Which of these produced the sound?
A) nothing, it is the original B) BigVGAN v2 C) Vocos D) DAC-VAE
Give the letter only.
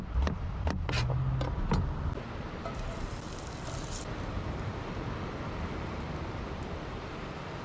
A